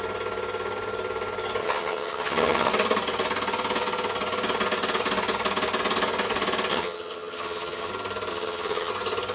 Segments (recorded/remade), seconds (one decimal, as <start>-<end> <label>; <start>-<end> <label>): 0.0-1.6 recorded; 1.6-2.7 remade; 2.7-6.7 recorded; 6.7-7.9 remade; 7.9-8.3 recorded; 8.3-8.9 remade; 8.9-9.3 recorded